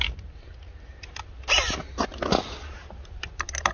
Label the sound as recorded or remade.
recorded